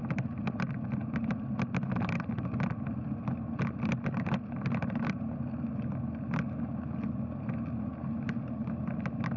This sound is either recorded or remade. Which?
recorded